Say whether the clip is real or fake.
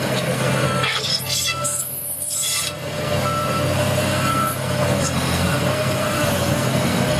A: fake